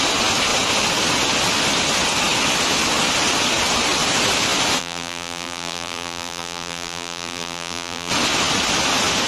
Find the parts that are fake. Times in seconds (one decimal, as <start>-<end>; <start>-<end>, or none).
4.8-8.1